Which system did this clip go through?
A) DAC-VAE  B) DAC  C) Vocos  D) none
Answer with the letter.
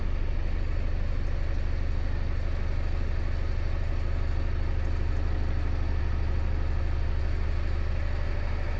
D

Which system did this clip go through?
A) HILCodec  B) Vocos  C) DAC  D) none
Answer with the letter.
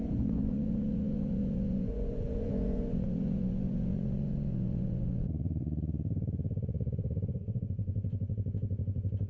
B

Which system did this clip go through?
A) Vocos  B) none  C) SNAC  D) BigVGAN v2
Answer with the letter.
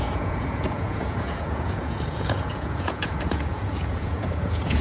A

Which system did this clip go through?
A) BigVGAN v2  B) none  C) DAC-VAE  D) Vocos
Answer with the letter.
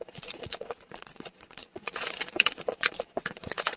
D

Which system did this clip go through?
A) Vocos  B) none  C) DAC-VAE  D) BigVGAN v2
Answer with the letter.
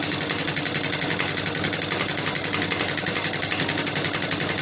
B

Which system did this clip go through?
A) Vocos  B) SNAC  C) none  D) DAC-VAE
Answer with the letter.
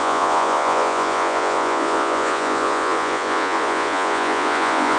A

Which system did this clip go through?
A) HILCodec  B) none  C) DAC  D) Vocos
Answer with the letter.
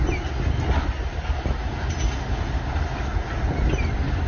B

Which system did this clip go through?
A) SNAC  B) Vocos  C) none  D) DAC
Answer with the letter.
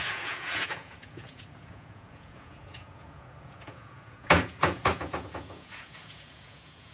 B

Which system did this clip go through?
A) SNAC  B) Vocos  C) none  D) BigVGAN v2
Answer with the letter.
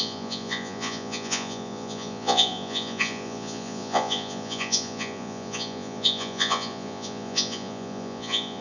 B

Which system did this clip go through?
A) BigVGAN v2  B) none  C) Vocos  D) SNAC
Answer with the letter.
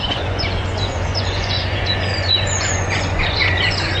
C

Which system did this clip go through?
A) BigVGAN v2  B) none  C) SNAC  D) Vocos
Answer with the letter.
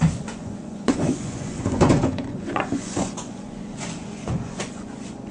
D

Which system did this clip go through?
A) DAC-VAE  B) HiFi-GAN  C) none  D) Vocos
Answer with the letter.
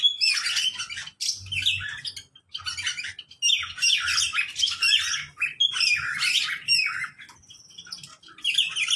C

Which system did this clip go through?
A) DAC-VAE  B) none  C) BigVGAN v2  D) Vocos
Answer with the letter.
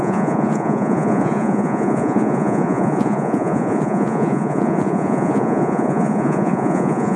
D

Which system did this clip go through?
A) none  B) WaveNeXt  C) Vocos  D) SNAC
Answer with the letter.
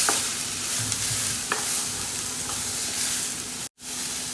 A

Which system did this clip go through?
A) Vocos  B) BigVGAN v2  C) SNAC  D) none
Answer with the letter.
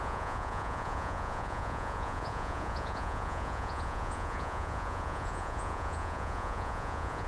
A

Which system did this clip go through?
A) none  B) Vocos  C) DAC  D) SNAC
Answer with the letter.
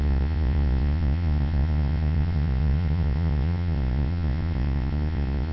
B